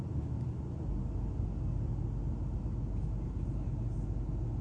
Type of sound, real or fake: real